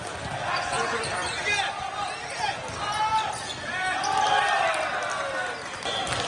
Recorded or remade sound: recorded